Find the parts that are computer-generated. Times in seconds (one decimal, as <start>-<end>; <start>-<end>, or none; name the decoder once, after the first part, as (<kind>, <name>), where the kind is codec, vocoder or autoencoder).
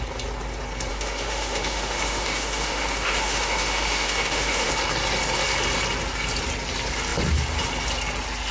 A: 0.9-4.7 (autoencoder, DAC-VAE)